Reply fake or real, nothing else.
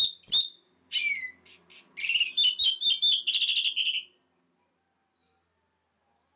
real